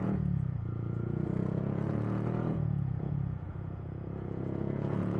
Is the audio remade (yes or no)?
yes